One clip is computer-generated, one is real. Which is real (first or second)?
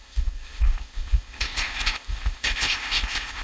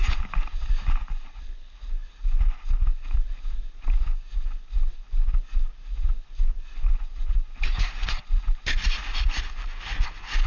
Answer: second